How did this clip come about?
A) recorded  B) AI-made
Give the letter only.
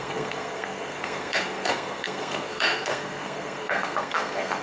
B